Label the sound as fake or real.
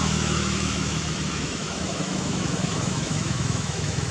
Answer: fake